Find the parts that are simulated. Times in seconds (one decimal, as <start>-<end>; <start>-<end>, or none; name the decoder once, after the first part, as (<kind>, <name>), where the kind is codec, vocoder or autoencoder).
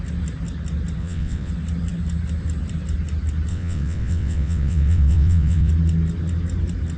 1.0-1.5 (vocoder, WaveNeXt); 3.5-5.7